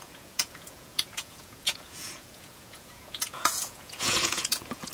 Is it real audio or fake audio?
fake